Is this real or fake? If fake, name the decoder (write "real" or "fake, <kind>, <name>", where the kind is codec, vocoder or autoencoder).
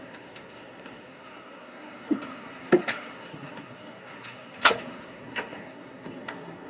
fake, codec, SNAC